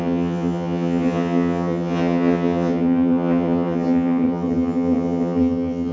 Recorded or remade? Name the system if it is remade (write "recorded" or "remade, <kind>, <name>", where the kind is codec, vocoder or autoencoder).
remade, vocoder, HiFi-GAN